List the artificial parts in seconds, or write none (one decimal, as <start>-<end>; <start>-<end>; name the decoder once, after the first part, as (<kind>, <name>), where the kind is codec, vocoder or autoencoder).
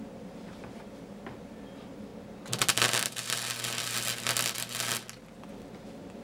0.0-2.1 (vocoder, BigVGAN v2); 5.8-6.2